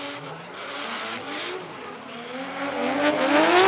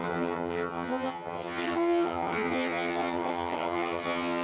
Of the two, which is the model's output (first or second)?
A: second